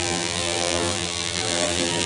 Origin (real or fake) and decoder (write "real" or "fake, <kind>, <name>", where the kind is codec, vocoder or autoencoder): fake, vocoder, BigVGAN v2